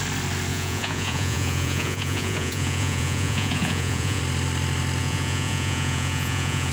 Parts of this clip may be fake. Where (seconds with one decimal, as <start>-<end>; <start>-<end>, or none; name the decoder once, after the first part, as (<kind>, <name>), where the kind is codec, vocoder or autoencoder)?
0.5-4.2 (vocoder, Vocos); 5.0-6.7